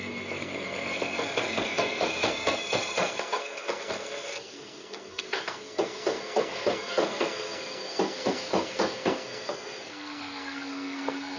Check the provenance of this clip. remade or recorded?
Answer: remade